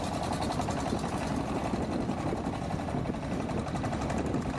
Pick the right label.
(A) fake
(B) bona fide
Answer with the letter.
B